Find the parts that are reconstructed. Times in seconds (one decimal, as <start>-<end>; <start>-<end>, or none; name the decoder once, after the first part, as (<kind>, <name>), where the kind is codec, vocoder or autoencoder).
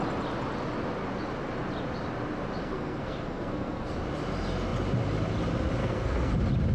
2.6-3.9 (codec, SNAC); 5.8-6.3